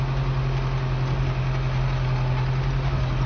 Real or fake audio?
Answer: real